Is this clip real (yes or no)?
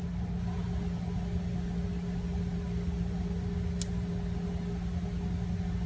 yes